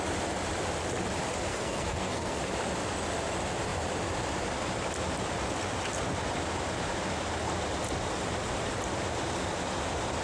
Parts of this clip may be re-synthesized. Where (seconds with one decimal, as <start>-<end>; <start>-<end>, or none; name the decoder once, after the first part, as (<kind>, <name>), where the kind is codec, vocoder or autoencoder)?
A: 1.5-2.4 (codec, SNAC)